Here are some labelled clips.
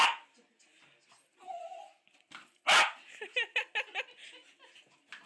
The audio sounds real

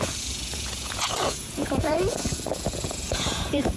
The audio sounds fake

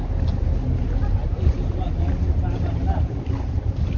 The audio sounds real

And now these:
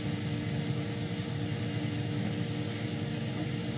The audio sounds real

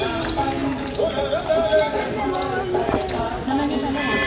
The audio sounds real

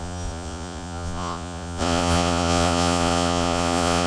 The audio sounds fake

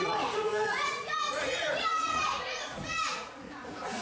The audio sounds fake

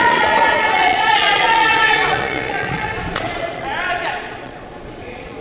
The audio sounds fake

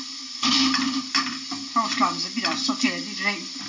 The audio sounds real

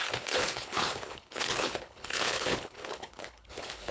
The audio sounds fake